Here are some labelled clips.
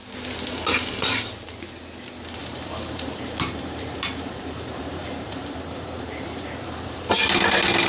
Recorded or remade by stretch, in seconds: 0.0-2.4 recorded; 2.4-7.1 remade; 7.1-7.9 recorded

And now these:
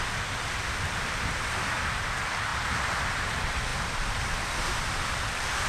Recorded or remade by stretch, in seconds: 0.0-5.7 remade

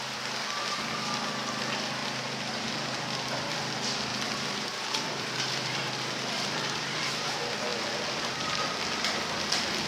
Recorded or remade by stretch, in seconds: 0.0-2.0 recorded; 2.0-2.7 remade; 2.7-4.1 recorded; 4.1-7.1 remade; 7.1-9.9 recorded

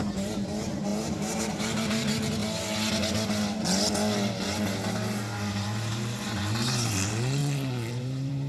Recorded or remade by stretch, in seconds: 0.0-2.4 remade; 2.4-5.5 recorded; 5.5-7.4 remade; 7.4-7.9 recorded; 7.9-8.5 remade

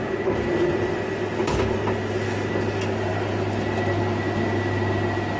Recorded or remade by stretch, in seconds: 0.0-0.7 recorded; 0.7-2.5 remade; 2.5-5.4 recorded

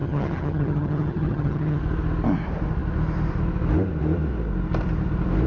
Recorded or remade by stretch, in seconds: 0.0-1.8 remade; 1.8-5.5 recorded

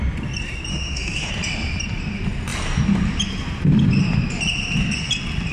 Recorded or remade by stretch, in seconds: 0.0-0.7 recorded; 0.7-1.3 remade; 1.3-5.5 recorded